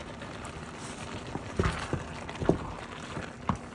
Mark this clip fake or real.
real